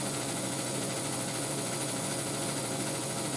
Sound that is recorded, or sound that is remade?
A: remade